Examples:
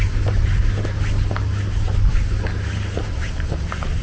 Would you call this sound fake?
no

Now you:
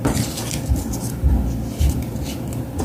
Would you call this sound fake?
no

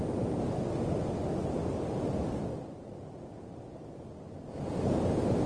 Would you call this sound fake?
no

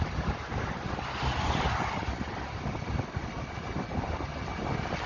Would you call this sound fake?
no